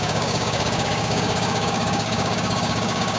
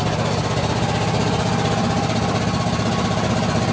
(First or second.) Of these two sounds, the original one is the second